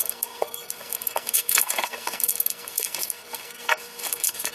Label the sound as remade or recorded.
remade